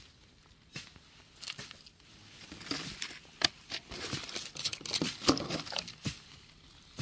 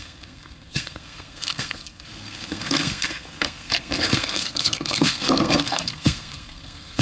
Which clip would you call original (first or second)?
first